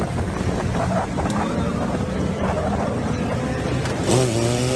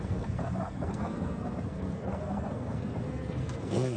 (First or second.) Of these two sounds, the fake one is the second